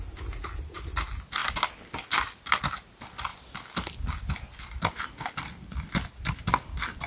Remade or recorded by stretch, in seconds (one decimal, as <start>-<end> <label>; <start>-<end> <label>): 0.0-7.1 recorded